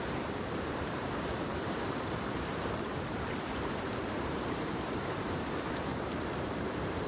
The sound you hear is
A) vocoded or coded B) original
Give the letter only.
A